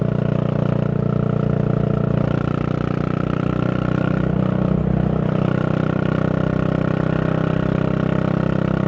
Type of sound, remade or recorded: recorded